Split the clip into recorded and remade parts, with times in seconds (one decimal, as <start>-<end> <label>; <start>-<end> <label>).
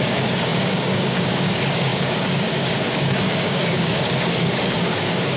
0.0-5.4 remade